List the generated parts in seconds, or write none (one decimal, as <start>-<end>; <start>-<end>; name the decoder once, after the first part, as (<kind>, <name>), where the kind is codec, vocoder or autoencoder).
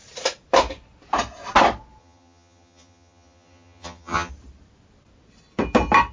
2.0-4.3 (vocoder, HiFi-GAN)